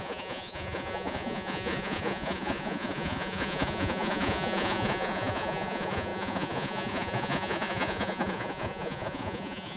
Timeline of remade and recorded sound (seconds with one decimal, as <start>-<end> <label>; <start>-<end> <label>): 0.0-9.8 remade